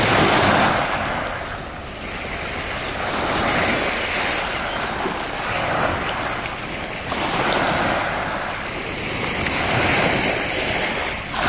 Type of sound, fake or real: real